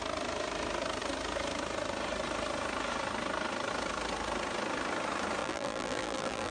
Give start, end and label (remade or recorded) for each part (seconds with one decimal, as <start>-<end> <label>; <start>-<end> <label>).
0.0-5.4 recorded; 5.4-6.5 remade